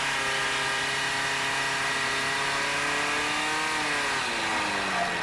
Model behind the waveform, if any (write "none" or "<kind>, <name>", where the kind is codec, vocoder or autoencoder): none